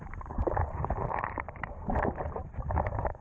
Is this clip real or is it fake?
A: fake